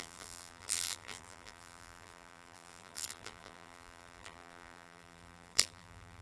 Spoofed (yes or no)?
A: yes